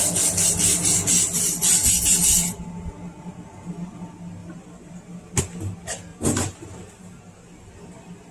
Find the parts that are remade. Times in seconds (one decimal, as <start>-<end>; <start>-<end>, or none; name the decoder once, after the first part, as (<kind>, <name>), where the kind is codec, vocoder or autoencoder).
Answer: 6.1-7.2 (vocoder, BigVGAN v2)